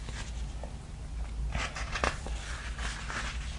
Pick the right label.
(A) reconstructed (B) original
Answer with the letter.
B